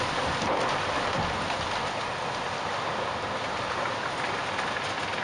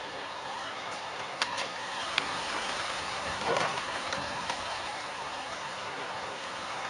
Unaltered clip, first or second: first